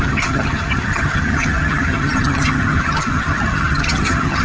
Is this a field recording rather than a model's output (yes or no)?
no